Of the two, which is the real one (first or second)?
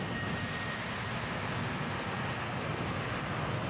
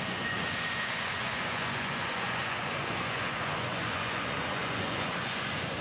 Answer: first